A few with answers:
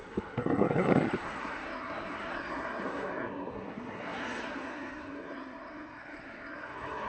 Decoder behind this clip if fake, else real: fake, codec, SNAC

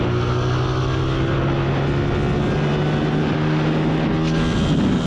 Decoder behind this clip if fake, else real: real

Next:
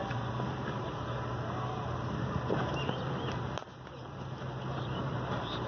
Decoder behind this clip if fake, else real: fake, vocoder, BigVGAN v2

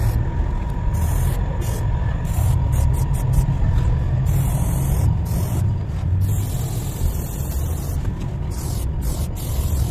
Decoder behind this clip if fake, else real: real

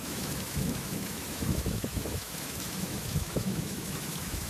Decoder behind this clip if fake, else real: fake, autoencoder, DAC-VAE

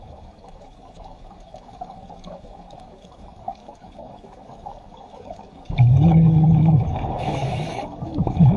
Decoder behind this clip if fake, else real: fake, codec, DAC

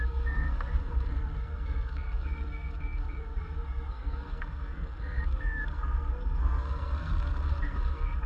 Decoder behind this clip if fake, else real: fake, codec, SNAC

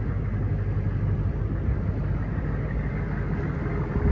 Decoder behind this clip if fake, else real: real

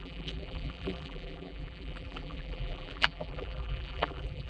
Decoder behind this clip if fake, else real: fake, vocoder, BigVGAN v2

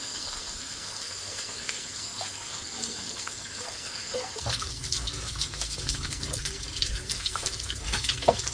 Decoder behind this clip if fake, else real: fake, codec, SNAC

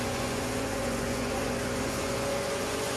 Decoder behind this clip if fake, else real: fake, vocoder, Vocos